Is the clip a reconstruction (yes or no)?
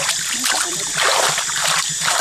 no